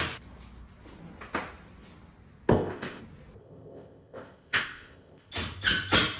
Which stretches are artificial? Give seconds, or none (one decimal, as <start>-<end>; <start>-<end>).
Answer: 2.5-3.0; 3.4-5.3